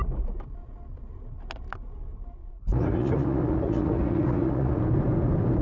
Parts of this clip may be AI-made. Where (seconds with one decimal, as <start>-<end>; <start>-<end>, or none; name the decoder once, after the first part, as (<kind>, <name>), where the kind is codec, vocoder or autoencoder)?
2.4-4.8 (vocoder, Vocos)